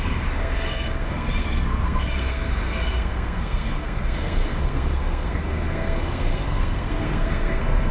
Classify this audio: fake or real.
fake